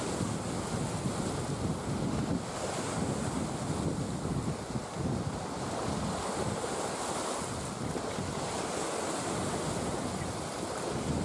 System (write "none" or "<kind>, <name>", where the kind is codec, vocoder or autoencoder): none